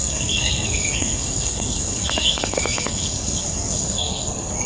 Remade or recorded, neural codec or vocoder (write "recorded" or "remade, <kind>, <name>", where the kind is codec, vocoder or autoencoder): remade, codec, SNAC